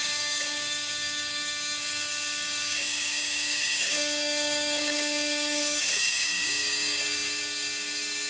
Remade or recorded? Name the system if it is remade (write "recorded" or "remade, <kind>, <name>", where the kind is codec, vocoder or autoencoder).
remade, codec, DAC